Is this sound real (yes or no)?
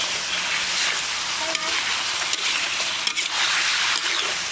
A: yes